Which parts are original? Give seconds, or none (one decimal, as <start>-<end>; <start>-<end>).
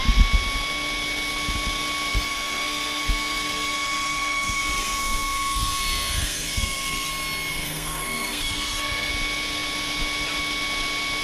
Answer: 0.0-2.1; 7.1-7.5; 9.1-11.2